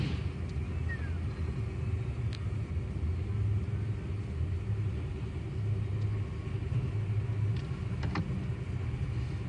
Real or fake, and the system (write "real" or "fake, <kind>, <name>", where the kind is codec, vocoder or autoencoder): real